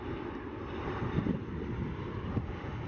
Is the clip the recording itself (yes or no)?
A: yes